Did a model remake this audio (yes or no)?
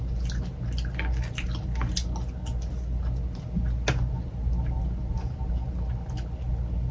no